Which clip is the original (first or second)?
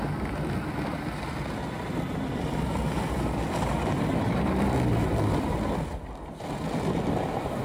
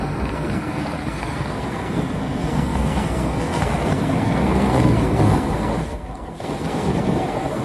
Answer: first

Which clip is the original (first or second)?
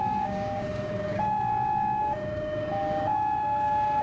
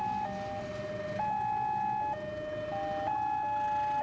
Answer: second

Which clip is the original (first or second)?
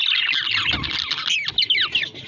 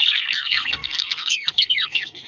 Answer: first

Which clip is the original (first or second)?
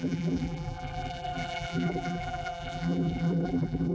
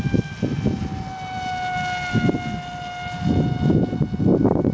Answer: second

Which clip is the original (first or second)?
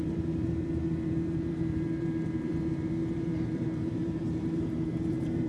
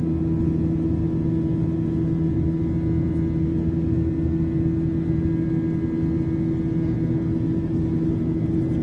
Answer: second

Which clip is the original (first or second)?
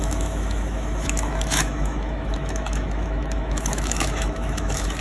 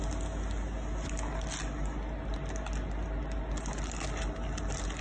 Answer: second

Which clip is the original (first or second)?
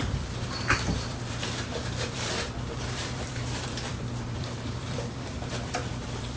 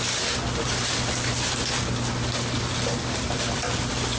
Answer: second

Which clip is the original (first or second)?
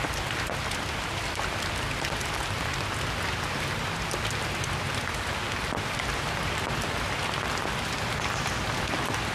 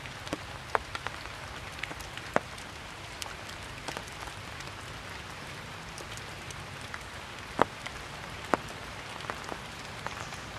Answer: first